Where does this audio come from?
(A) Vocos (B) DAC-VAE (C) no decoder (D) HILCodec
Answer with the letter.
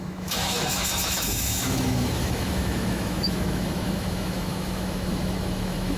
B